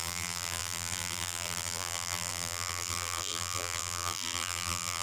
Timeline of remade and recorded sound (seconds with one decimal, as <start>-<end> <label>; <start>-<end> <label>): 0.0-5.0 remade